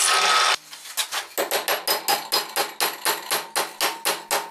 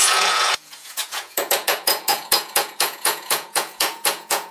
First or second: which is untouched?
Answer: first